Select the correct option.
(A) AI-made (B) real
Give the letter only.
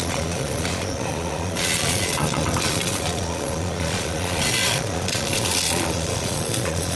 A